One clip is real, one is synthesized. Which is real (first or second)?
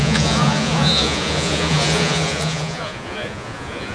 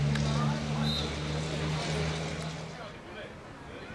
second